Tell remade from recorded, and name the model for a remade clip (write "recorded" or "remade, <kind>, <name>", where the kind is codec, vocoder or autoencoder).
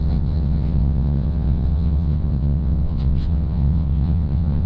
remade, vocoder, WaveNeXt